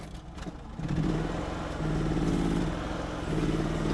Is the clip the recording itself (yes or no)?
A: yes